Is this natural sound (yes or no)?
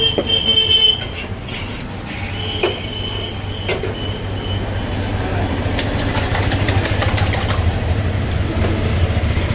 yes